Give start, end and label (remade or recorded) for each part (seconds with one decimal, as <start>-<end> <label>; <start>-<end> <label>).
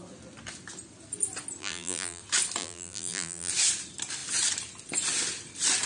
0.0-1.6 recorded; 1.6-2.2 remade; 2.2-2.6 recorded; 2.6-3.5 remade; 3.5-5.9 recorded